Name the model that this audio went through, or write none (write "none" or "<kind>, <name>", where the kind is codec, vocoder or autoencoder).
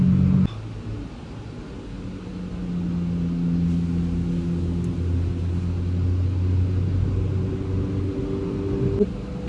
none